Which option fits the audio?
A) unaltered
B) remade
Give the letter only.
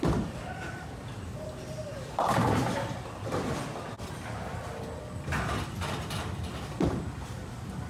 B